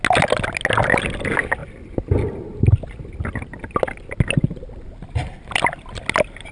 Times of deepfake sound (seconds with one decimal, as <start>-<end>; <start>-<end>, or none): none